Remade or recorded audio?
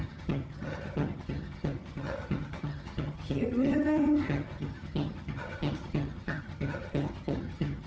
remade